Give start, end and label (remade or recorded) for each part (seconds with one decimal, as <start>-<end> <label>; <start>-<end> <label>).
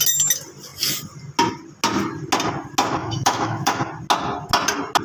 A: 0.0-3.0 recorded; 3.0-3.8 remade; 3.8-5.0 recorded